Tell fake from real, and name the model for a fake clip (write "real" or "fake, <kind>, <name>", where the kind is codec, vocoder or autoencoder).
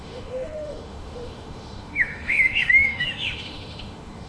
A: fake, autoencoder, DAC-VAE